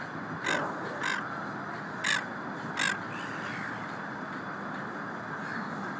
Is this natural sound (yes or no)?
yes